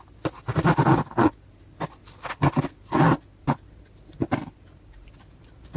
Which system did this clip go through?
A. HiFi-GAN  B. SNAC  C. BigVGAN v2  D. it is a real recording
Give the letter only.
D